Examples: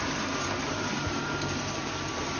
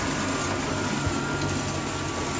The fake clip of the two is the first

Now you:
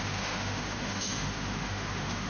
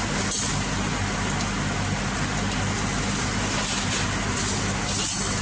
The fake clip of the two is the first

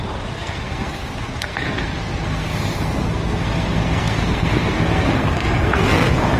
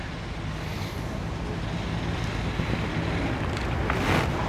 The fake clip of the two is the first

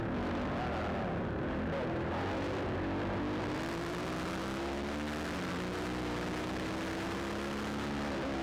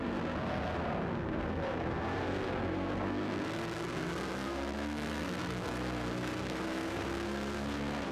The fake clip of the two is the second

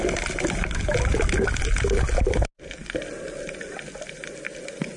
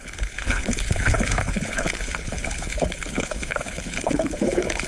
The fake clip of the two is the second